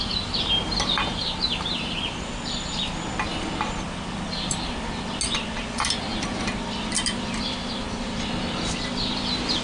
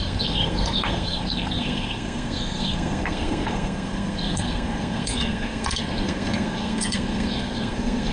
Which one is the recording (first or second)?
first